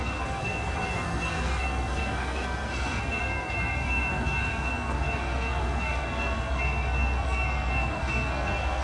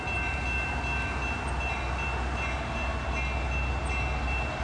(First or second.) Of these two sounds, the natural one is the second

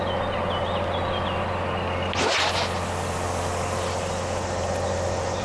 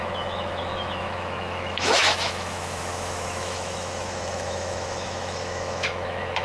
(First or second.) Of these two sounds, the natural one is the first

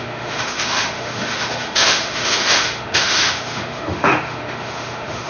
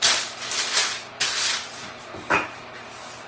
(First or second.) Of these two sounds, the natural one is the second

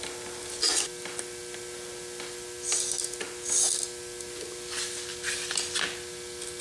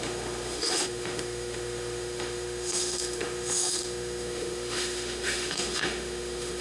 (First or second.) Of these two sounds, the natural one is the first